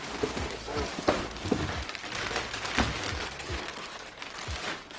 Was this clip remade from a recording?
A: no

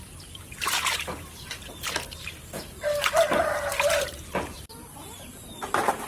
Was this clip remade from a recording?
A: yes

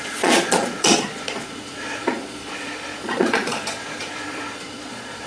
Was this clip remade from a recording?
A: yes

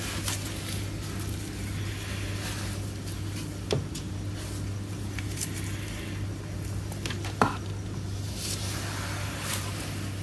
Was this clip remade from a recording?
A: no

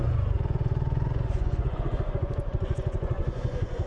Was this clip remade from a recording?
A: yes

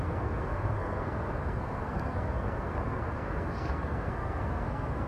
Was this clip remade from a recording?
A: yes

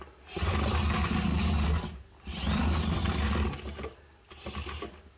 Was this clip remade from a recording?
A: no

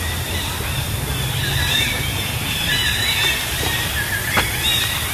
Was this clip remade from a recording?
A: yes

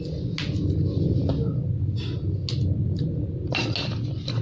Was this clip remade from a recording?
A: no